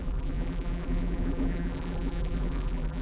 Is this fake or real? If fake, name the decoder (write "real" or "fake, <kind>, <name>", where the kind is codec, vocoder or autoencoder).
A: fake, vocoder, BigVGAN v2